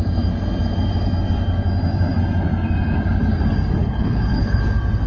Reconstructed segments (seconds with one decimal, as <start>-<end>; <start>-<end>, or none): 3.8-4.6